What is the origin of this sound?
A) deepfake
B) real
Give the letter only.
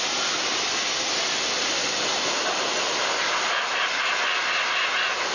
B